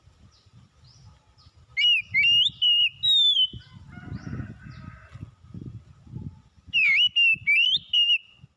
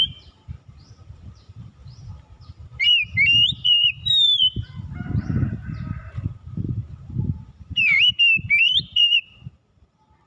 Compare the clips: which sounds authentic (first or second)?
first